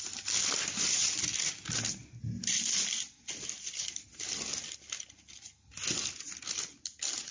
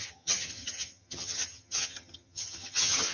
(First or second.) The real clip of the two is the first